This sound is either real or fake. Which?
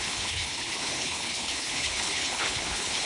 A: fake